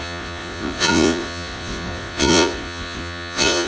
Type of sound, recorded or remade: remade